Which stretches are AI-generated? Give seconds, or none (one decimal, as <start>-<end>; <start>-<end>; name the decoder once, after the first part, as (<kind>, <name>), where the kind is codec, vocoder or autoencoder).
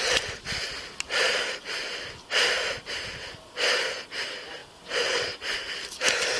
none